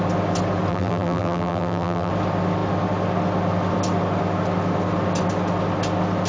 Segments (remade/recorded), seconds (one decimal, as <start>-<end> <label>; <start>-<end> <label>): 0.0-0.7 recorded; 0.7-2.1 remade; 2.1-6.3 recorded